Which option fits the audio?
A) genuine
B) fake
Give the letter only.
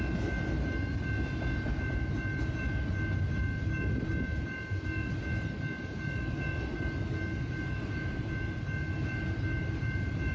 A